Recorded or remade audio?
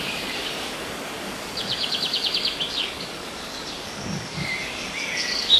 remade